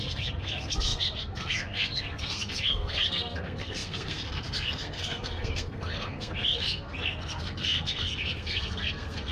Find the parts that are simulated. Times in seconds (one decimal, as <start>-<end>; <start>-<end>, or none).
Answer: 0.0-9.3